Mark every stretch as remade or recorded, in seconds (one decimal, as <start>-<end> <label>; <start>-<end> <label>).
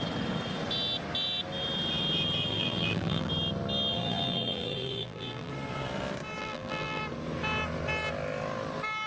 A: 0.0-2.5 recorded; 2.5-3.3 remade; 3.3-3.9 recorded; 3.9-5.5 remade; 5.5-6.4 recorded; 6.4-7.0 remade; 7.0-9.1 recorded